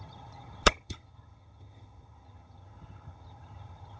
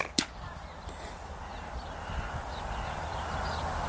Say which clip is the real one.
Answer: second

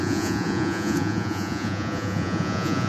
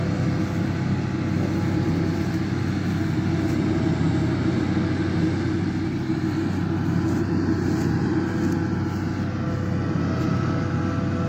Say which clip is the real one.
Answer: second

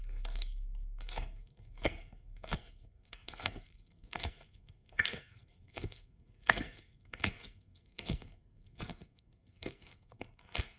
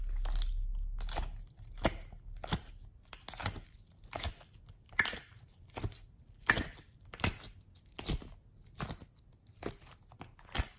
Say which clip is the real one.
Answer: second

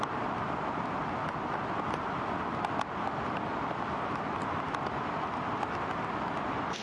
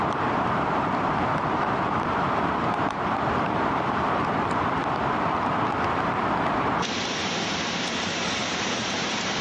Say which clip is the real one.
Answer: first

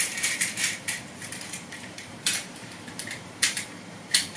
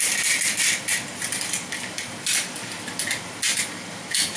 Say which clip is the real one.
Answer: second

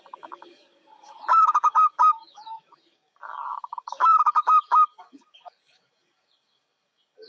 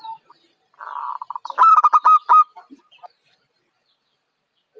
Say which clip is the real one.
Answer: second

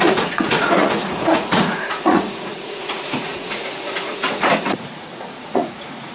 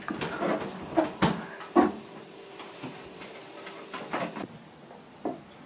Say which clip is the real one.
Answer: second